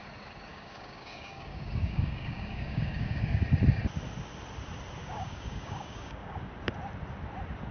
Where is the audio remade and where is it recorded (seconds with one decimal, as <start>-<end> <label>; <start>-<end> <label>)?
0.0-0.5 recorded; 0.5-3.4 remade; 3.4-5.0 recorded; 5.0-6.5 remade; 6.5-7.7 recorded